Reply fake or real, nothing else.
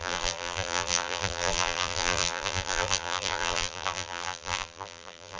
fake